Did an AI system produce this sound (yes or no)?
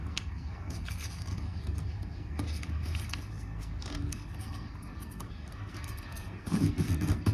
yes